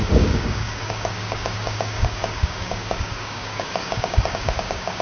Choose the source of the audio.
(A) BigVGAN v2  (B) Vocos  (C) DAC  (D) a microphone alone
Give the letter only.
C